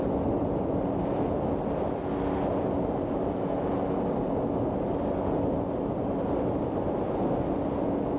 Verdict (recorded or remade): recorded